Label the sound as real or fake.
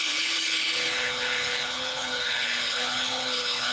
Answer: fake